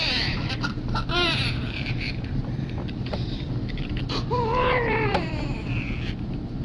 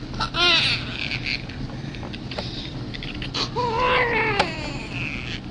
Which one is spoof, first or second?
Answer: first